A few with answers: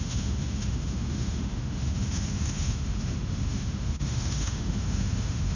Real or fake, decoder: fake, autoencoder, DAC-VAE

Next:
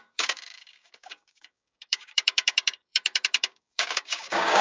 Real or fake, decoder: fake, codec, DAC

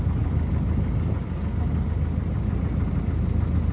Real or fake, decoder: real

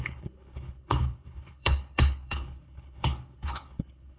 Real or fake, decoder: fake, codec, HILCodec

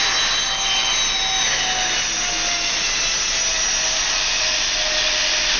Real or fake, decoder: real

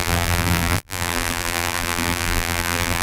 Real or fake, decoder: fake, vocoder, BigVGAN v2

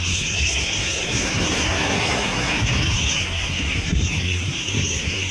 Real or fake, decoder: fake, codec, SNAC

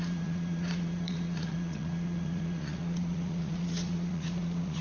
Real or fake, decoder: fake, vocoder, Vocos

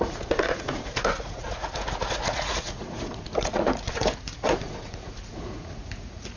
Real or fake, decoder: fake, vocoder, Vocos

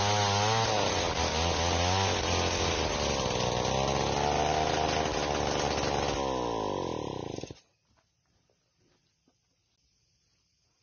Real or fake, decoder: real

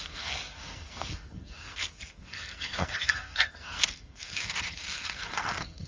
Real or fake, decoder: fake, codec, SNAC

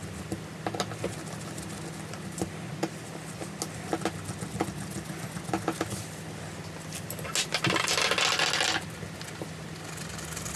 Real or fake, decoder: real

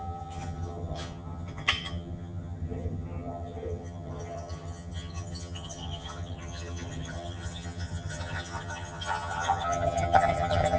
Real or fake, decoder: fake, vocoder, HiFi-GAN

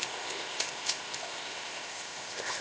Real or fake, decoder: fake, codec, ZipCodec